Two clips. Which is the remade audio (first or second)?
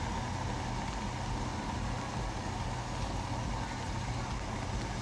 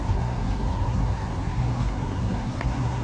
second